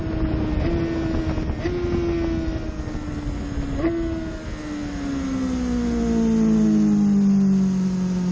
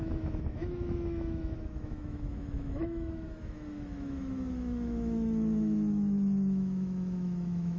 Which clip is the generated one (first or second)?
second